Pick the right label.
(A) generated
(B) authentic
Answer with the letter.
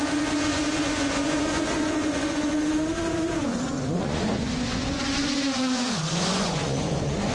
A